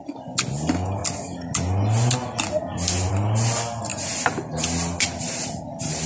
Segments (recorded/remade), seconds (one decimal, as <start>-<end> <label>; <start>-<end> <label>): 0.0-6.1 recorded